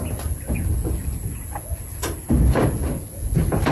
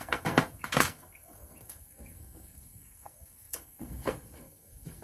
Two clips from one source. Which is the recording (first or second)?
first